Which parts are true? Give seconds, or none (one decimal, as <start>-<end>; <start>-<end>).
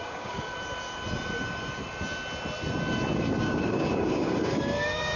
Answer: 0.5-3.4